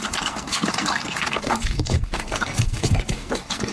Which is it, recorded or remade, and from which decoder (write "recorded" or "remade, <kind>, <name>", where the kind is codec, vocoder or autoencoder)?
remade, codec, SNAC